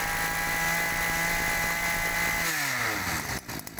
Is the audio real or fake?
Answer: real